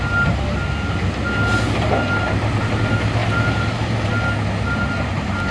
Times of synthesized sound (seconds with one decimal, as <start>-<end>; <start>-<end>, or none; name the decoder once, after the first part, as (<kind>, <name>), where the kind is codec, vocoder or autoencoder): 3.2-4.1 (vocoder, BigVGAN v2)